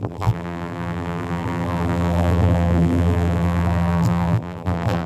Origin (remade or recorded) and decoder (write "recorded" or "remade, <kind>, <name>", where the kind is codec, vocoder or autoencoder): remade, vocoder, BigVGAN v2